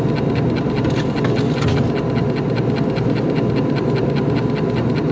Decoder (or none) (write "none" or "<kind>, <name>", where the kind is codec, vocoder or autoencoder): none